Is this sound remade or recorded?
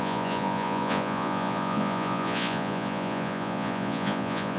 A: remade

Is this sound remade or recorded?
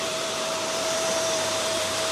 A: remade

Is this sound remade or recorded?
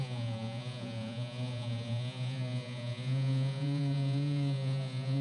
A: remade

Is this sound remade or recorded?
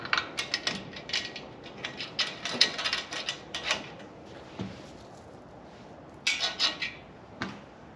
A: recorded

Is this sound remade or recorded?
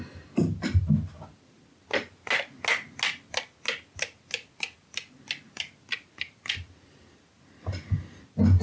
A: recorded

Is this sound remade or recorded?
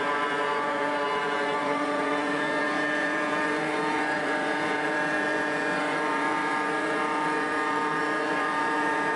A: remade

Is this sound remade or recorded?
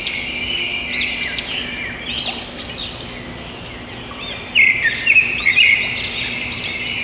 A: recorded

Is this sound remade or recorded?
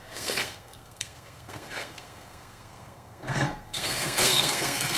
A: remade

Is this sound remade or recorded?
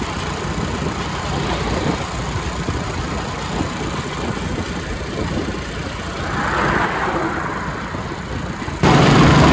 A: recorded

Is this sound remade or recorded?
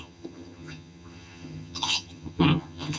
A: remade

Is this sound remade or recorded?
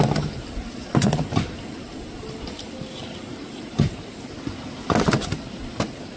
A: recorded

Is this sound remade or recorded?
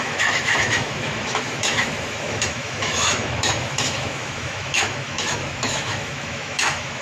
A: remade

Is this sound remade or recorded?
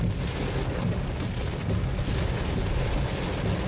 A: recorded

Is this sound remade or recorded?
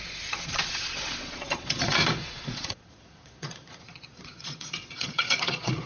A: remade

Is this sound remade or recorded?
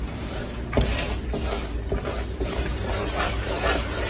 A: remade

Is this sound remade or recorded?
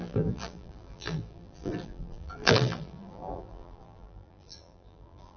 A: remade